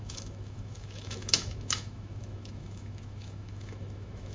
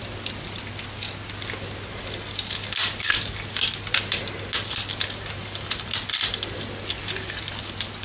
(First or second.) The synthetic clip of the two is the first